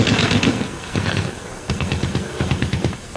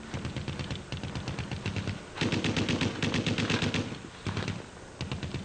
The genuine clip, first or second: second